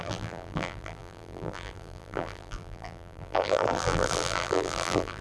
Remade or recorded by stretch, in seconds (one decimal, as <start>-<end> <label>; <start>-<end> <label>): 0.0-5.2 remade